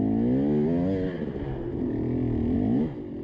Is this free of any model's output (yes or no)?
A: yes